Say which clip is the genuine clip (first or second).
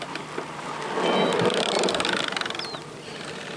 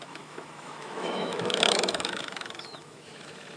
first